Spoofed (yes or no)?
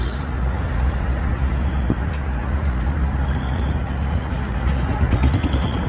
yes